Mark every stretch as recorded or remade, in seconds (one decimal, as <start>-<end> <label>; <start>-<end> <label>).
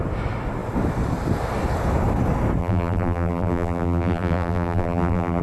0.0-2.6 recorded; 2.6-5.4 remade